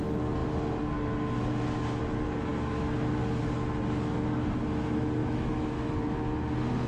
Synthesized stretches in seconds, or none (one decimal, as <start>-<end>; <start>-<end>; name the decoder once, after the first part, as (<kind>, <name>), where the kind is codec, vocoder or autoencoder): 5.2-5.9 (autoencoder, DAC-VAE)